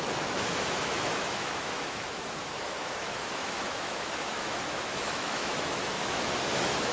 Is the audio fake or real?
fake